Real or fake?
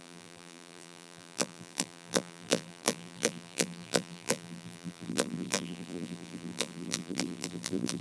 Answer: fake